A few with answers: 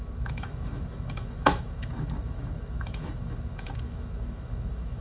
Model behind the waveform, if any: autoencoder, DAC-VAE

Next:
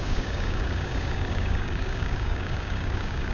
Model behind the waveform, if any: codec, DAC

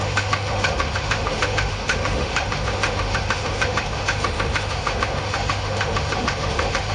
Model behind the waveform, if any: autoencoder, DAC-VAE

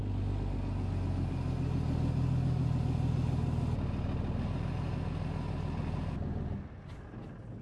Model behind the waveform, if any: none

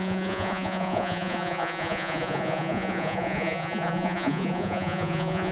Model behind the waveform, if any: vocoder, Vocos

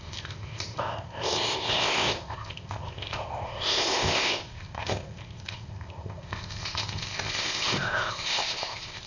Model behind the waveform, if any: codec, ZipCodec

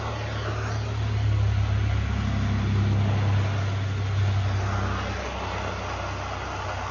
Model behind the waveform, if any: none